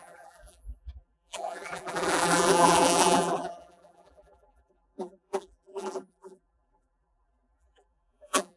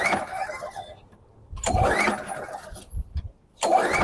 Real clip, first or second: second